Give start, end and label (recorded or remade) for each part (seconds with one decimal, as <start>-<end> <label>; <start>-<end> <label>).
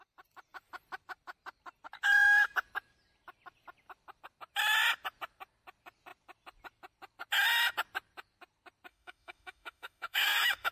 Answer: 0.0-8.9 recorded; 8.9-10.7 remade